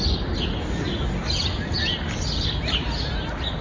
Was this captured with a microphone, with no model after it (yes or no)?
yes